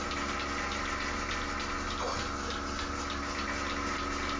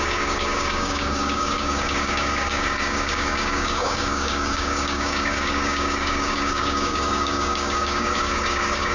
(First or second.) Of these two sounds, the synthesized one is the second